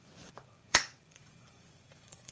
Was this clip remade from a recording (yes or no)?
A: yes